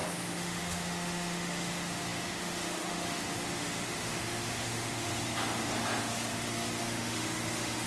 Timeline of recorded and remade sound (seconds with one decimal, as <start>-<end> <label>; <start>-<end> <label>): 0.0-5.1 remade; 5.1-6.8 recorded; 6.8-7.9 remade